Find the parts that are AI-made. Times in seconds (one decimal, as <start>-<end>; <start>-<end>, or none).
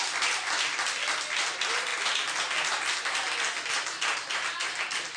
none